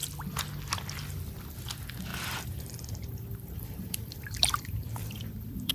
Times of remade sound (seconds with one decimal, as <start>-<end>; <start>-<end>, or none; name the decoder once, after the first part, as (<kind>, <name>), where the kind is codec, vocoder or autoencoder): 2.1-5.7 (vocoder, BigVGAN v2)